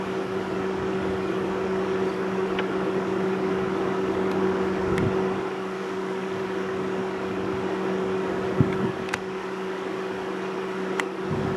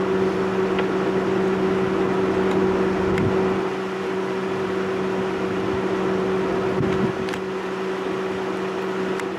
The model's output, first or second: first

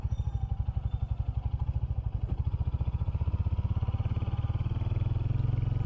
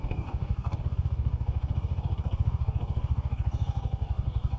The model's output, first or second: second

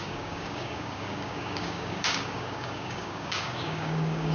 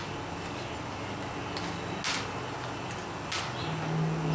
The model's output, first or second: first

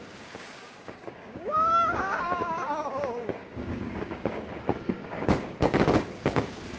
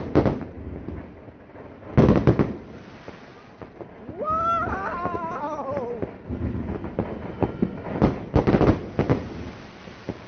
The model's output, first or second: first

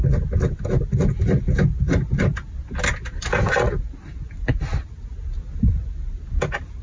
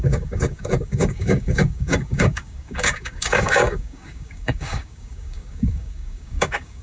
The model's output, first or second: second